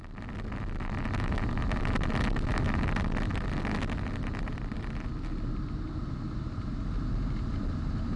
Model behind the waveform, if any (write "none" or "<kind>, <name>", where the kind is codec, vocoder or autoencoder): none